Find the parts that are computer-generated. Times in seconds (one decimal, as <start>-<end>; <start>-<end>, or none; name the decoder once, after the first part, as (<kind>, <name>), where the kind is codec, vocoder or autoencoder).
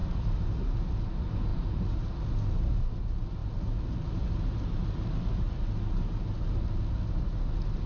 none